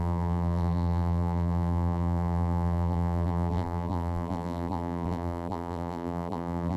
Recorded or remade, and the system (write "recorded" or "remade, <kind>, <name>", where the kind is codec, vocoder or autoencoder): remade, vocoder, BigVGAN v2